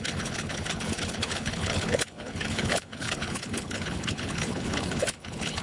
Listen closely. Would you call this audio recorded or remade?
remade